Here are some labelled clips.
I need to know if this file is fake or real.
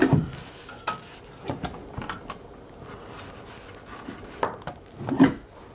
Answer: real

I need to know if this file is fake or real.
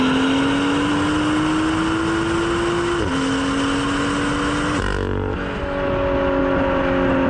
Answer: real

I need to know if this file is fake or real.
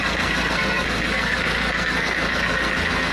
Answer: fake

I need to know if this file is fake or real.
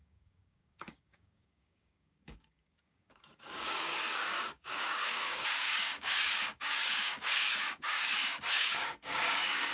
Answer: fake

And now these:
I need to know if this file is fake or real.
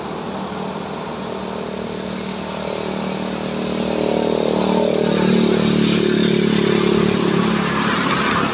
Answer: real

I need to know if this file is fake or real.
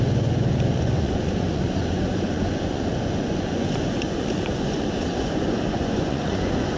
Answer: fake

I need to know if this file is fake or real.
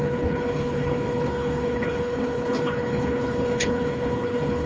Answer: fake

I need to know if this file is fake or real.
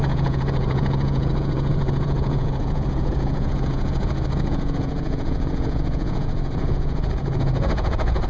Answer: fake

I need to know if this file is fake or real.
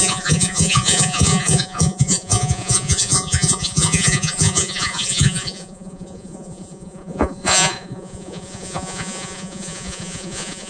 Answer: fake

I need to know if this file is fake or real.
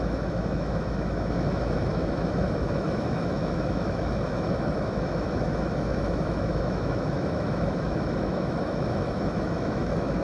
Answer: fake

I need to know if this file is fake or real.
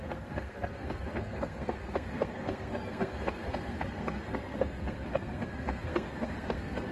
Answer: fake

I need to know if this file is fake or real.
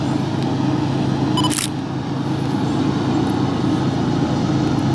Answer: real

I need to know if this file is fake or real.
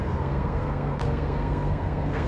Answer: fake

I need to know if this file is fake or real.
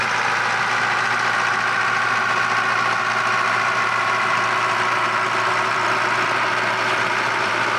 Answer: fake